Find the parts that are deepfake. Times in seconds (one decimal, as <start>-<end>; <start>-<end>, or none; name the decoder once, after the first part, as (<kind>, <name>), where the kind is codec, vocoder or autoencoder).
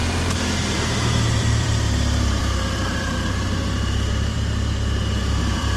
0.0-5.8 (vocoder, BigVGAN v2)